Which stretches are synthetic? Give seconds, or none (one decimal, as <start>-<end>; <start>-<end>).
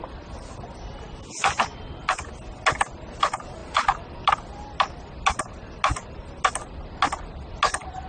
3.6-4.3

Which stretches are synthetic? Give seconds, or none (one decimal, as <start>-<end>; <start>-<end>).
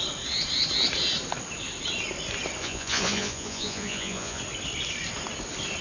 2.6-4.4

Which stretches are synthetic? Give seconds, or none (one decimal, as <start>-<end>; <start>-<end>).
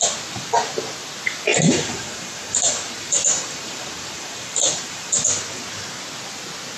1.5-5.4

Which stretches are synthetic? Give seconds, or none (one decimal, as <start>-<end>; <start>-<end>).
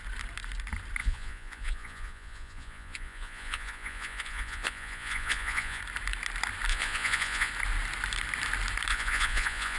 1.0-5.8; 6.7-7.5; 8.9-9.8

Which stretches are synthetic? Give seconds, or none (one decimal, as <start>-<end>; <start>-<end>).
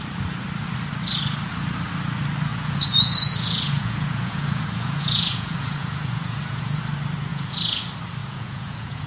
2.5-6.8; 7.3-7.8; 8.2-9.1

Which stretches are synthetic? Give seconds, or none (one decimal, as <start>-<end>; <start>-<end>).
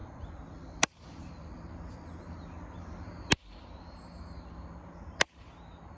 none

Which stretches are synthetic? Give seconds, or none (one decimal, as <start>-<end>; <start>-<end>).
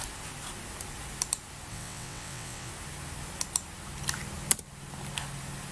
1.7-2.7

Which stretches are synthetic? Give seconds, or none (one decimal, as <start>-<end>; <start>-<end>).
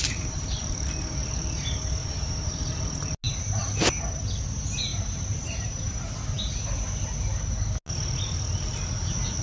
0.0-0.6; 2.0-2.5; 4.9-6.9